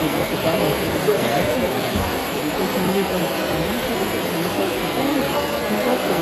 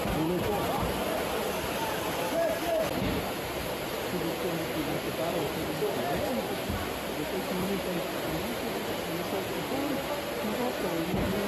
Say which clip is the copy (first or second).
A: first